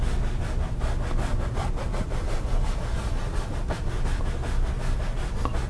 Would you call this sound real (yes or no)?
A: yes